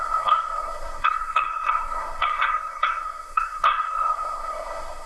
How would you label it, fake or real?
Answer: fake